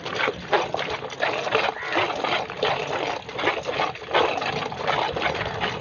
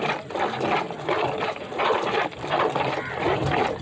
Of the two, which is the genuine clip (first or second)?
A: first